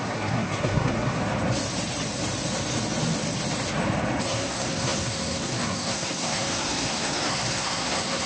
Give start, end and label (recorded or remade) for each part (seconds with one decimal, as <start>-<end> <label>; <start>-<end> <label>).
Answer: 0.0-1.2 remade; 1.2-4.2 recorded; 4.2-8.3 remade